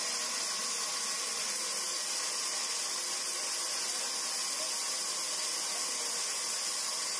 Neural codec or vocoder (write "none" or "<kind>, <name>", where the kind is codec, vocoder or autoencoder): none